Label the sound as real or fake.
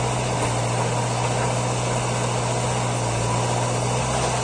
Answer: real